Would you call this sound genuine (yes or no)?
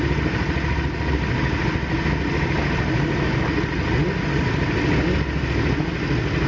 yes